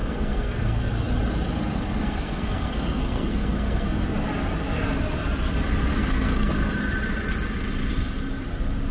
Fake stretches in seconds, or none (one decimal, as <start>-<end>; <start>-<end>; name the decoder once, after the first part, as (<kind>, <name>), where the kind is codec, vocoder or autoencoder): 0.0-0.9 (codec, SNAC); 1.7-4.0; 5.9-6.5